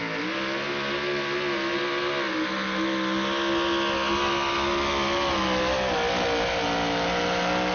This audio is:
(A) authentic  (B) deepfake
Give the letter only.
A